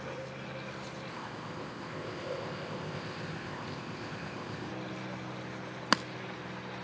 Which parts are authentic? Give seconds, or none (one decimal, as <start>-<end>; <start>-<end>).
0.0-1.1; 4.7-6.8